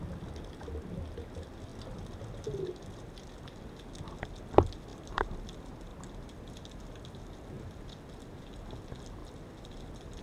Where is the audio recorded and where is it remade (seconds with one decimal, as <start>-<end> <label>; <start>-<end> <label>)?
0.0-1.7 recorded; 1.7-2.2 remade; 2.2-4.9 recorded; 4.9-5.4 remade; 5.4-5.9 recorded; 5.9-8.4 remade; 8.4-9.2 recorded; 9.2-10.2 remade